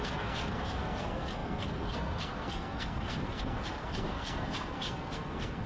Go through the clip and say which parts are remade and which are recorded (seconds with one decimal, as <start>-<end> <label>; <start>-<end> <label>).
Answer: 0.0-5.7 remade